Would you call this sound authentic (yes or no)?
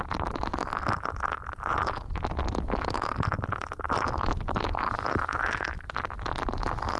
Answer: yes